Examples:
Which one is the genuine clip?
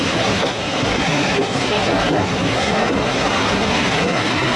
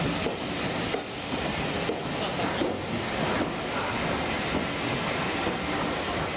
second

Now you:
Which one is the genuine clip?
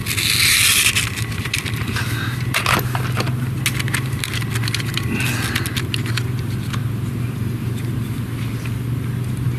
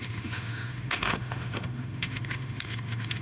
first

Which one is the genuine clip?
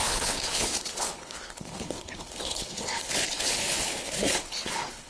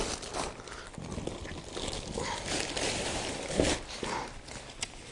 second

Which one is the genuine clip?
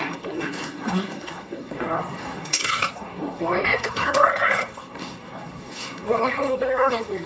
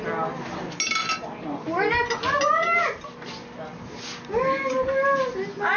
second